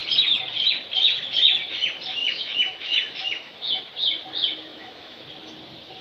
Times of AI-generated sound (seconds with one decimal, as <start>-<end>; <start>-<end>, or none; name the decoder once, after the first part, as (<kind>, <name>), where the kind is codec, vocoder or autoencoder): 2.2-3.8 (autoencoder, DAC-VAE); 4.7-5.2